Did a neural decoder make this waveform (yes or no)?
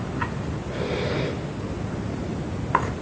no